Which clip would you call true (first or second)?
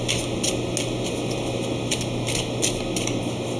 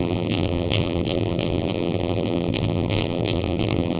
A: first